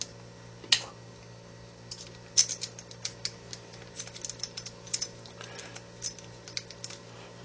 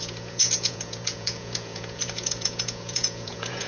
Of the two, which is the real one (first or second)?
first